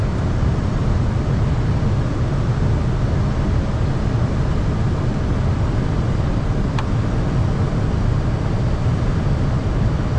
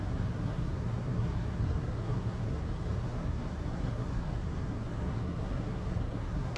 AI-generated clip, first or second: second